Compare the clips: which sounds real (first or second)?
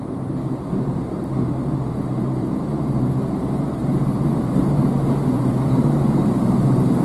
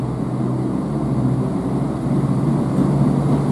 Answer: second